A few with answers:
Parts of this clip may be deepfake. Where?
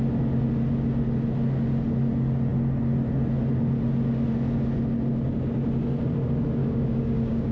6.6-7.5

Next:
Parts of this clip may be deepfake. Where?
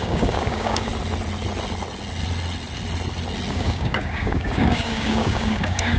0.0-0.9; 3.5-6.0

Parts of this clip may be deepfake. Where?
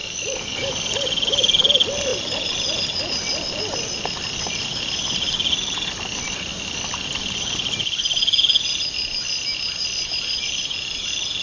0.0-0.7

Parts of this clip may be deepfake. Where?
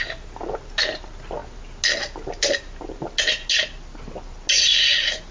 none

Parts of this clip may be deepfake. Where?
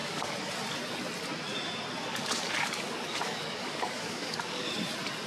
0.0-0.5; 2.1-4.7